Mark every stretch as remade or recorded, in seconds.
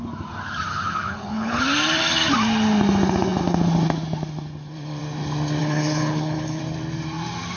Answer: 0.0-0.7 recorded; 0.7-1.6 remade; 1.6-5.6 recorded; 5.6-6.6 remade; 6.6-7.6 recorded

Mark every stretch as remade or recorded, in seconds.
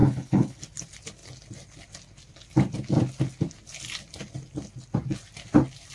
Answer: 0.0-0.6 remade; 0.6-5.9 recorded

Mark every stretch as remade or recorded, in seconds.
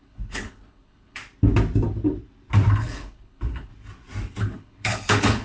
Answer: 0.0-1.2 remade; 1.2-2.7 recorded; 2.7-3.7 remade; 3.7-4.4 recorded; 4.4-5.4 remade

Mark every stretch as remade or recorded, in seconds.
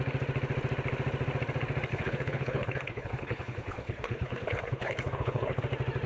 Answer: 0.0-1.9 recorded; 1.9-5.6 remade; 5.6-6.1 recorded